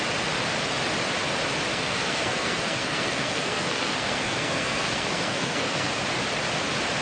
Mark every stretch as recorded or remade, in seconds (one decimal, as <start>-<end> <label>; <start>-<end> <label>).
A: 0.0-1.7 recorded; 1.7-5.9 remade; 5.9-7.0 recorded